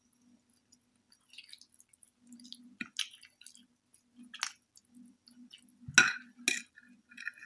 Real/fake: real